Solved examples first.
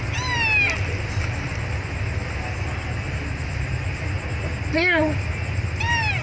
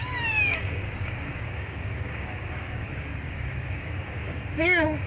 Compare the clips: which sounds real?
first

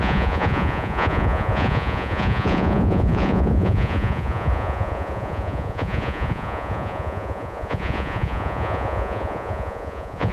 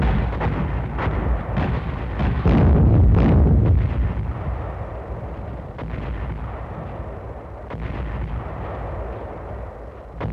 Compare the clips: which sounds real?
second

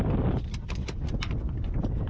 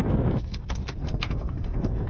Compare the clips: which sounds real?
first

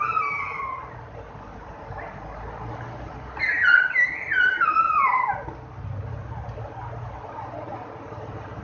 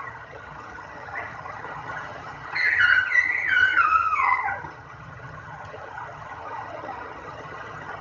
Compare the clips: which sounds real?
first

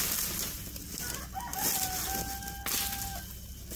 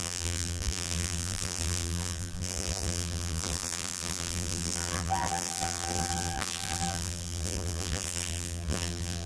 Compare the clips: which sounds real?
first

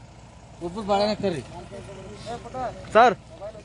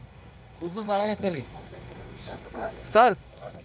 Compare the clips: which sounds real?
first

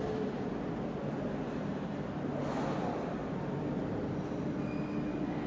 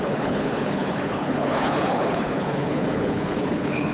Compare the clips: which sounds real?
first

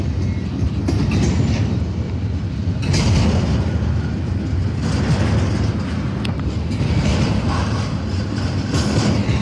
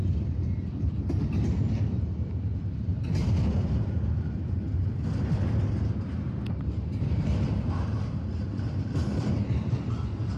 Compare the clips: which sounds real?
first